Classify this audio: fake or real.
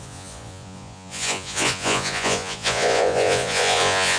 fake